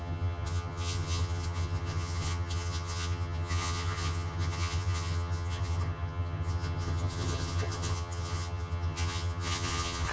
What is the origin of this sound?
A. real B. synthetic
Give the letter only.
B